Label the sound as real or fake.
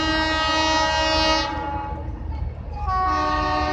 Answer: real